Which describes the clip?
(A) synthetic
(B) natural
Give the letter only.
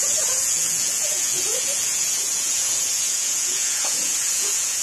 A